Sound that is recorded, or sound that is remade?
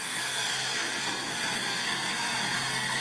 remade